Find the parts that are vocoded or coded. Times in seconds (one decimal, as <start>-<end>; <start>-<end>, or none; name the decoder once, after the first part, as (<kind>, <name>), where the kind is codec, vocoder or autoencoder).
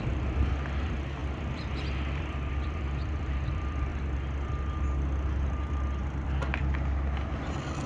1.2-3.9 (vocoder, BigVGAN v2); 6.0-6.6